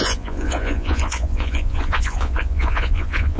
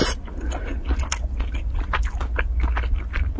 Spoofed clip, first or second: first